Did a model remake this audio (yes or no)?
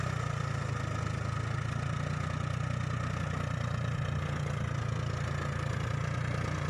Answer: no